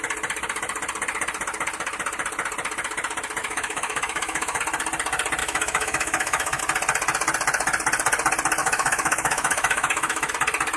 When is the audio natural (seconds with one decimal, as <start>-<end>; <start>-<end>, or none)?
0.0-3.4; 4.6-5.4; 6.6-8.6; 10.3-10.8